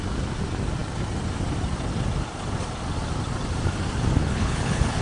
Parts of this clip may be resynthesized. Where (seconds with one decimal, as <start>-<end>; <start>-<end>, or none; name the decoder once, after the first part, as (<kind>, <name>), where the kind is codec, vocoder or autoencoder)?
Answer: 4.2-5.0 (codec, HILCodec)